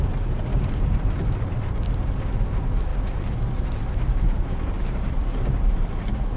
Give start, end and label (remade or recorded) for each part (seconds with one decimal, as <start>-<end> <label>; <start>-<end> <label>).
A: 0.0-0.5 remade; 0.5-2.4 recorded; 2.4-6.4 remade